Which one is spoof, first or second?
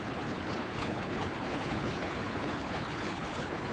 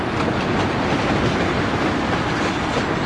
first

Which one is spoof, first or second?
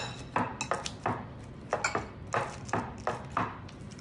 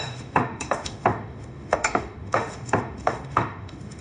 second